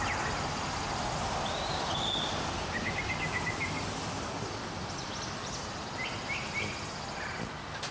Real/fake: real